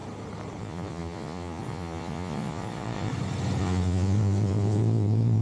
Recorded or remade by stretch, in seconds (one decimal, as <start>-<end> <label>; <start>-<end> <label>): 0.0-0.6 recorded; 0.6-3.1 remade; 3.1-3.6 recorded; 3.6-5.4 remade